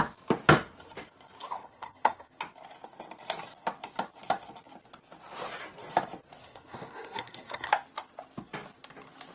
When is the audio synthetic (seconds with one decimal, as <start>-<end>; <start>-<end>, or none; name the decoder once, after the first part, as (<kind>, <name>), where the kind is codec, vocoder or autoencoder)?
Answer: 1.4-2.4 (codec, SNAC); 6.4-7.7